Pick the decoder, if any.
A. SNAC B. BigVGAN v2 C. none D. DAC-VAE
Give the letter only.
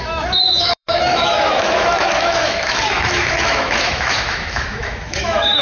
D